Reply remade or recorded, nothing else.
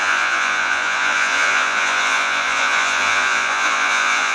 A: remade